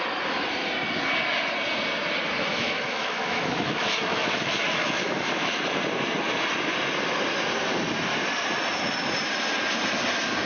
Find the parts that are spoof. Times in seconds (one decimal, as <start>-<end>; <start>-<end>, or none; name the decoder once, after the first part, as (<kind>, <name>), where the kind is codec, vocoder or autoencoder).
2.5-5.6 (autoencoder, DAC-VAE)